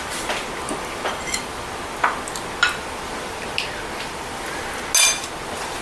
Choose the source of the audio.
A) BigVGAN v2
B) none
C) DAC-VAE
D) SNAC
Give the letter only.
B